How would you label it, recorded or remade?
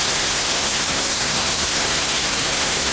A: remade